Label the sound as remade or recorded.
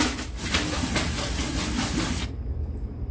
recorded